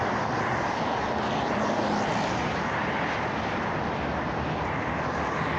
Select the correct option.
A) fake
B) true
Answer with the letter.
B